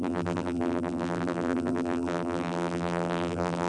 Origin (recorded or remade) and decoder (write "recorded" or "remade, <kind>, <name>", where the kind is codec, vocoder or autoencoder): remade, vocoder, BigVGAN v2